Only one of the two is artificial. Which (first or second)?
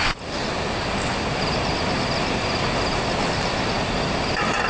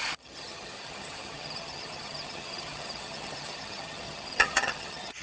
second